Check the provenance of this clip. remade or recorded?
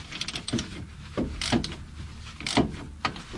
recorded